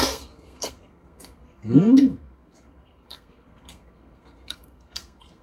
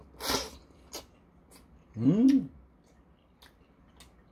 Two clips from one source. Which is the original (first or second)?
second